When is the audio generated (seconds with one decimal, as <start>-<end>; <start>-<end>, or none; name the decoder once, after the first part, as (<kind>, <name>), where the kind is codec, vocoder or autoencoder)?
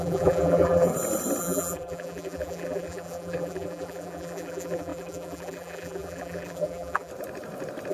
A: 0.0-0.9 (vocoder, BigVGAN v2); 1.4-7.1